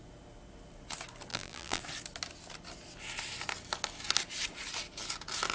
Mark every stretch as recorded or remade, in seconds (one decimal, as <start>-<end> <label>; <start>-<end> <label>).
0.0-1.3 recorded; 1.3-1.8 remade; 1.8-5.5 recorded